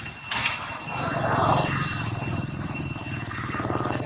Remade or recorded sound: recorded